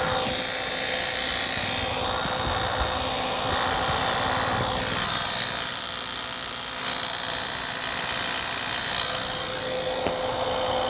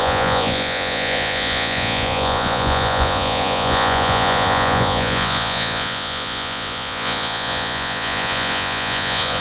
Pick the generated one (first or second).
second